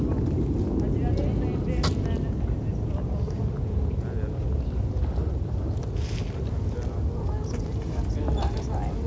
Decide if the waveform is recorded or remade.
recorded